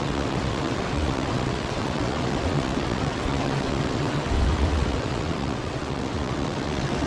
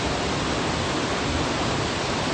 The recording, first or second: second